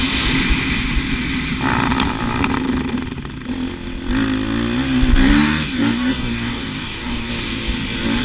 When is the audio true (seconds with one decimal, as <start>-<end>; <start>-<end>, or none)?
0.0-5.2; 7.3-8.2